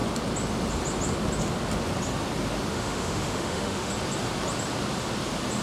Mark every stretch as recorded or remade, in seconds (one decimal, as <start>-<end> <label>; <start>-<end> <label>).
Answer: 0.0-2.7 recorded; 2.7-3.9 remade; 3.9-5.6 recorded